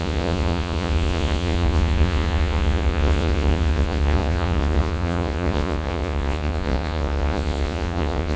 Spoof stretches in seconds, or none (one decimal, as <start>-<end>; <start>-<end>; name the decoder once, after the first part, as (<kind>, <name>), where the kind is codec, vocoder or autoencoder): 0.0-8.4 (vocoder, Vocos)